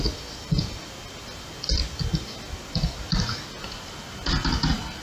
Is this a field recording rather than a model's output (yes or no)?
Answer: yes